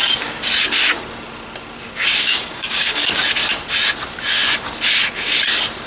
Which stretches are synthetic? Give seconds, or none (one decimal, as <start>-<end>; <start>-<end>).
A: 2.2-3.2